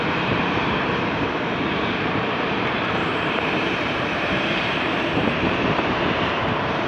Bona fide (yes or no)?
no